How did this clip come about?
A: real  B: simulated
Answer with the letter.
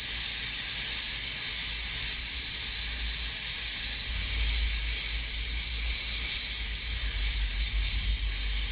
A